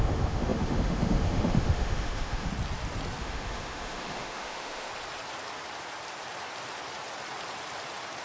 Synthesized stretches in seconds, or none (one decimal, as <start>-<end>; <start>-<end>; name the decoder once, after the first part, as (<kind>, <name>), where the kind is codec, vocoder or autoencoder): 0.0-2.5 (autoencoder, DAC-VAE); 3.2-4.9